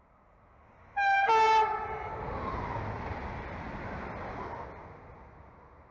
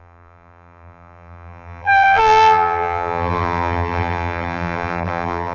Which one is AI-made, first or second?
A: second